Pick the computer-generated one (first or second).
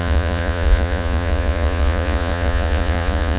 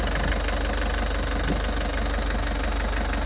first